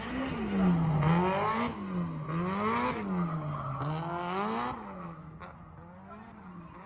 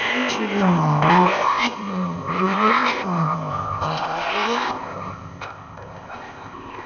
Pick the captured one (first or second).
first